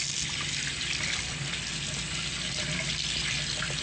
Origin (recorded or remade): recorded